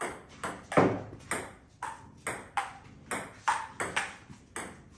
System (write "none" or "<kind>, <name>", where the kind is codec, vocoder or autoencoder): none